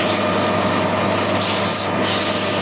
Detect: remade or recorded recorded